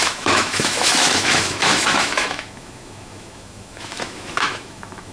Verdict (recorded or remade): remade